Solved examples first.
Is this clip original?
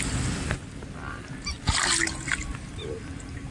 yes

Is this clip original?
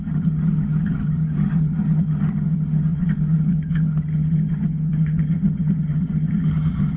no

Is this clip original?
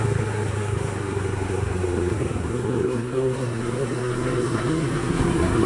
no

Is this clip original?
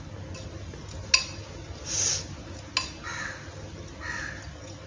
yes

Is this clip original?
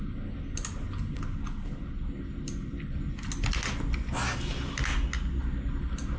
yes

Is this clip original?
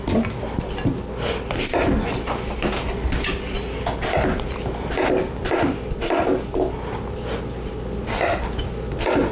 yes